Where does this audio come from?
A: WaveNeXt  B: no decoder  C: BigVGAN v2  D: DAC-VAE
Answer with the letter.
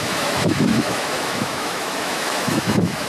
D